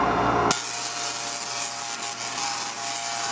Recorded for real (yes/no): yes